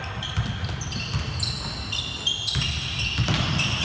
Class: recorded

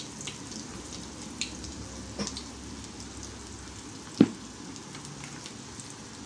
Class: recorded